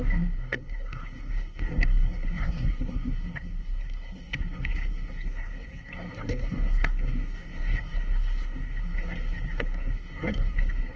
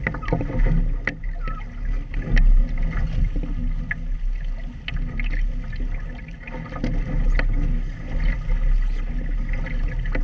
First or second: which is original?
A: second